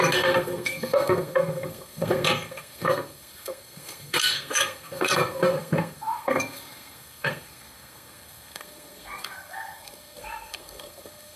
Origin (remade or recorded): remade